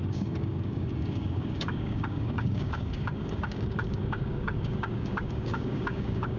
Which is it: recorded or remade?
remade